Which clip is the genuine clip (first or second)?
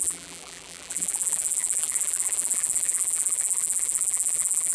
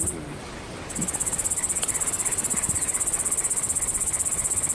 second